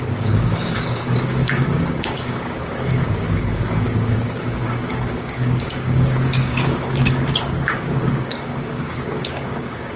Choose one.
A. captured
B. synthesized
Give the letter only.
B